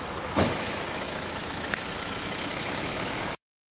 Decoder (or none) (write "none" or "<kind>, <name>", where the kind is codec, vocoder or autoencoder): autoencoder, DAC-VAE